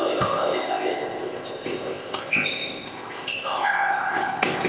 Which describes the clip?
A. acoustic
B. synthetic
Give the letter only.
B